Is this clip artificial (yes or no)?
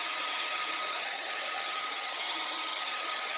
yes